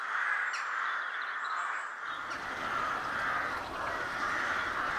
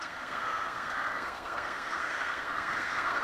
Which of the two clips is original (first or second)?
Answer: first